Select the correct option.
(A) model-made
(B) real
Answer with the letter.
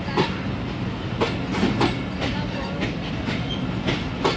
B